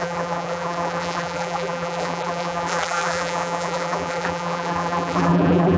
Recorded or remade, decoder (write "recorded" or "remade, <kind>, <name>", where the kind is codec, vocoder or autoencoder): remade, vocoder, BigVGAN v2